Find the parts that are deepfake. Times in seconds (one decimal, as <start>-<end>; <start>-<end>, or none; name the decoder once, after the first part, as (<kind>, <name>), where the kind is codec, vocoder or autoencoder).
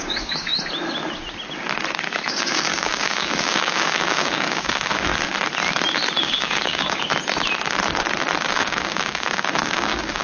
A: 0.0-0.5 (codec, DAC); 2.3-5.1; 6.2-7.1; 8.5-10.2